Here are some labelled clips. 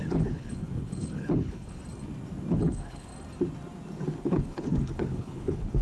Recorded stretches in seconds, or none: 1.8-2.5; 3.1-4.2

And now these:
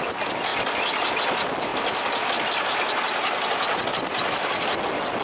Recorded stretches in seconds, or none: 0.0-5.2

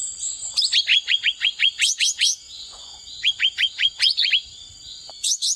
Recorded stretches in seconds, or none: 0.0-0.9; 4.3-5.6

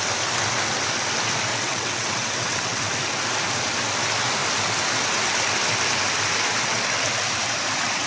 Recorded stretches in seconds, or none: 0.0-1.5; 2.8-8.1

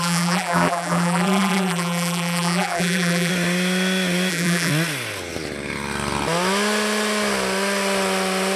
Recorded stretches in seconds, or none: 3.3-4.3; 4.7-8.6

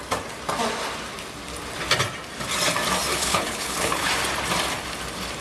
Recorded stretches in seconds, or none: 0.0-3.1; 4.1-5.4

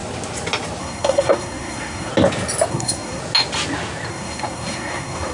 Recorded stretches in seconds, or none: 0.0-0.8; 2.1-2.7; 3.2-4.1